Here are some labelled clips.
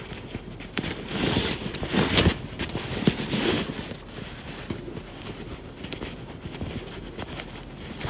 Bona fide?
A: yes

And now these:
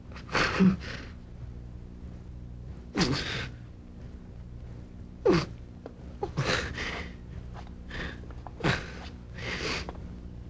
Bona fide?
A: yes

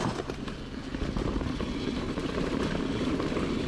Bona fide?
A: yes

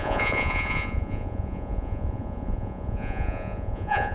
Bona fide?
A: no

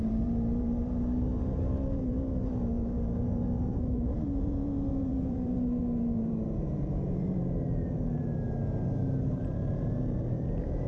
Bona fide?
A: no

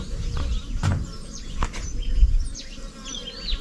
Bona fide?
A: yes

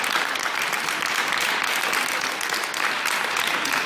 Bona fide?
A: yes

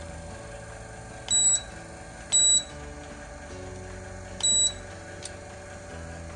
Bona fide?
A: yes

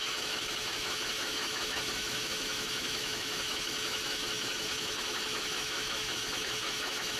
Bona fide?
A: no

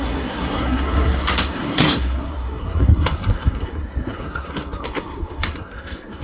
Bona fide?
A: no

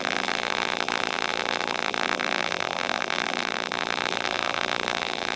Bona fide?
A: no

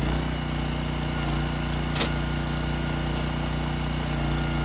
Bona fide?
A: yes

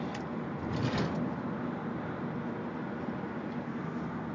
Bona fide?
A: yes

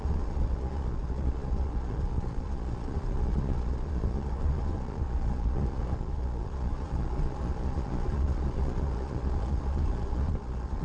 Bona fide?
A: no